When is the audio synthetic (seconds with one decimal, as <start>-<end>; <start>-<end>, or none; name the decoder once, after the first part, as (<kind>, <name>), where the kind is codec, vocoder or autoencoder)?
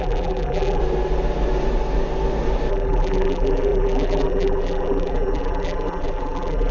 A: 0.0-0.8 (vocoder, BigVGAN v2); 2.7-6.7